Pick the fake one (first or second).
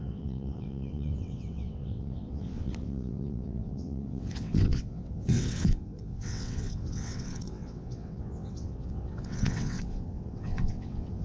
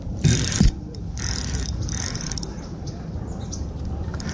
first